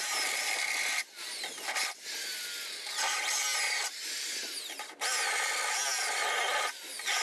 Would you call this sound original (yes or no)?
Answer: yes